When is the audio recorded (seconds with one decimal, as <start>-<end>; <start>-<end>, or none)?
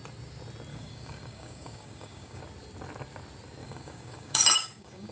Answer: 0.0-0.7; 2.4-3.6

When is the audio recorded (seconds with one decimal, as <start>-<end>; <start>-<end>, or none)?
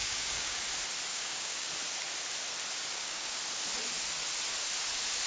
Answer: 0.6-1.1; 1.7-2.9; 3.4-5.3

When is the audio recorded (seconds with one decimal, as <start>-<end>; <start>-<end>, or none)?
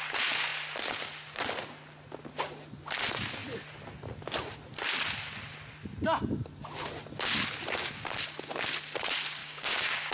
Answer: 0.0-9.4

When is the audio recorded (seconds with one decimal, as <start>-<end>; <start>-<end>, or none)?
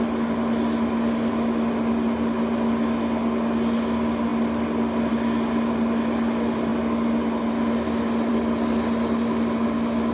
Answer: 0.0-10.1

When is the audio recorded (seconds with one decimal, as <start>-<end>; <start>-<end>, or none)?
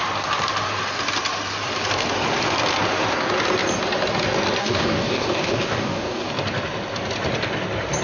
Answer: 0.0-4.6; 6.3-8.0